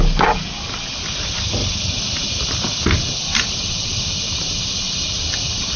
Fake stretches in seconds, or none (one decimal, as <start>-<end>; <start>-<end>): 0.0-5.8